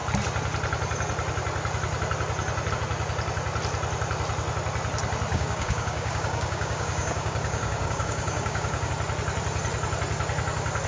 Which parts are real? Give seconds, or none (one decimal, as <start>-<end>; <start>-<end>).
0.0-5.3; 8.9-10.9